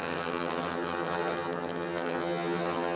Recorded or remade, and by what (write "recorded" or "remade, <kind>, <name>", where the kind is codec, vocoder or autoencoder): remade, vocoder, HiFi-GAN